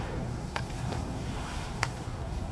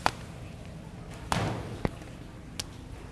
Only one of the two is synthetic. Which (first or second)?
first